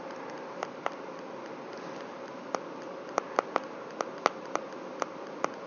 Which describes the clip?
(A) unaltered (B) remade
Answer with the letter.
A